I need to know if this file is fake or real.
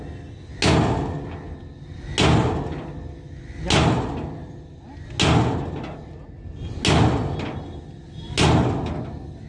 real